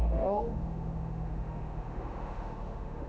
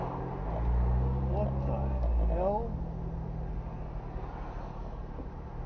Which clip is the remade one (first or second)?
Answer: first